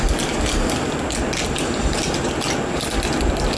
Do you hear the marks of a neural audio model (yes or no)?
no